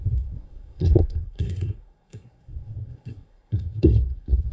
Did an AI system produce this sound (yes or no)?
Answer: yes